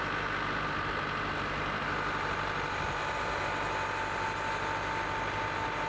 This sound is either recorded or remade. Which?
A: recorded